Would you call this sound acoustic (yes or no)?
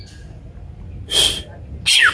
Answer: yes